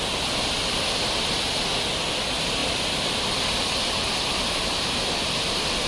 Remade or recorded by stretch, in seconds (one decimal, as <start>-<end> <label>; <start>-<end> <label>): 0.0-5.9 recorded